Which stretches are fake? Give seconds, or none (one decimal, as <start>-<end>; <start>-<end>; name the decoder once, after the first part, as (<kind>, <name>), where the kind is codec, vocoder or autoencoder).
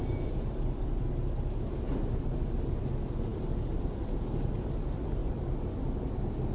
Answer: 0.0-1.1 (vocoder, BigVGAN v2); 3.3-4.2